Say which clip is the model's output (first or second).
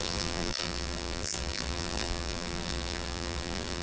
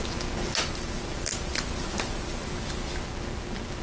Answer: first